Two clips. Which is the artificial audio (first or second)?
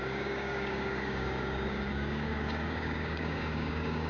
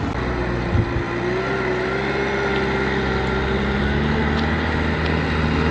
first